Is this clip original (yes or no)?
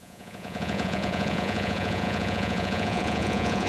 no